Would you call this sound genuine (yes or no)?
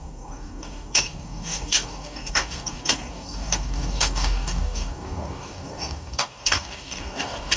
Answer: no